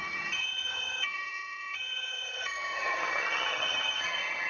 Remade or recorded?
remade